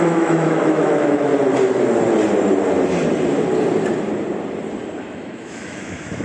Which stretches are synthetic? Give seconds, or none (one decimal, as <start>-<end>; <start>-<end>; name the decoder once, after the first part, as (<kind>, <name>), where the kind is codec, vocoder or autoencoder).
0.0-1.3 (autoencoder, DAC-VAE); 5.0-6.2